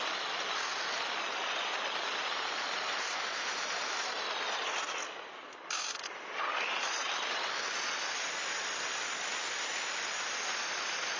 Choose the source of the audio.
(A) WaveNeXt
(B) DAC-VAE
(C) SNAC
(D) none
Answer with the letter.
D